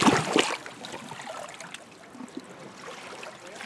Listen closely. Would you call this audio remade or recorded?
recorded